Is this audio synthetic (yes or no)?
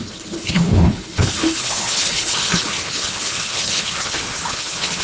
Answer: yes